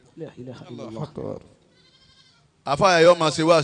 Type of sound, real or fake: fake